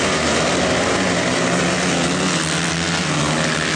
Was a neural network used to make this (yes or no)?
no